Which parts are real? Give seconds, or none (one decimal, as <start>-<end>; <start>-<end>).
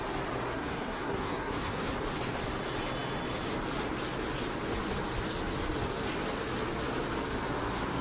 0.0-0.5; 1.9-8.0